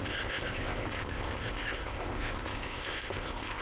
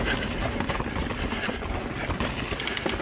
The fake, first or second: first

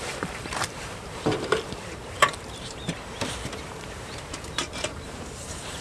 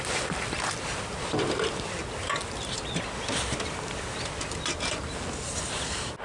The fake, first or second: first